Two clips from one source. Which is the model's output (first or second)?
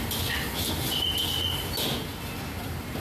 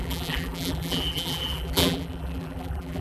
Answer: second